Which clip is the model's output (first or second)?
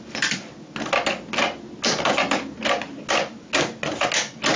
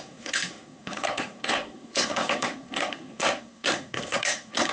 second